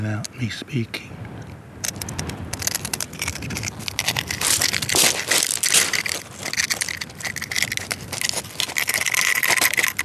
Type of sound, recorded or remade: recorded